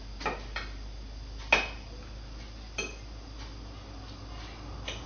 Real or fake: real